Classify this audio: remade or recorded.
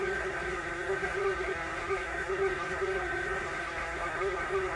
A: remade